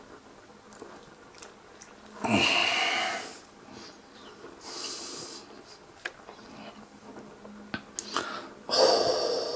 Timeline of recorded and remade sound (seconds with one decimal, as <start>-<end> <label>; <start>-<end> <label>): 0.0-9.6 recorded